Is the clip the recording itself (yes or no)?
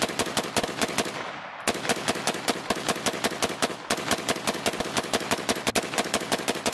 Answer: yes